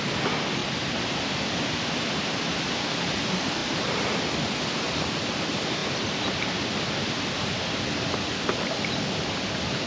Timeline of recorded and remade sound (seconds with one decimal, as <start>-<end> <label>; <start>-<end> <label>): 0.0-0.6 remade; 0.6-1.3 recorded; 1.3-3.6 remade; 3.6-5.1 recorded; 5.1-5.8 remade; 5.8-8.6 recorded; 8.6-9.9 remade